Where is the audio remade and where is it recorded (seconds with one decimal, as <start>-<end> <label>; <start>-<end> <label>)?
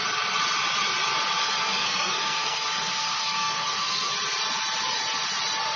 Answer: 0.0-1.4 recorded; 1.4-4.1 remade; 4.1-5.8 recorded